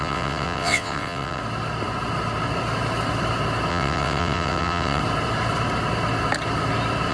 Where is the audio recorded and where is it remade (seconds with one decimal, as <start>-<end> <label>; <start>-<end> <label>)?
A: 0.0-1.4 remade; 1.4-3.7 recorded; 3.7-5.0 remade; 5.0-7.1 recorded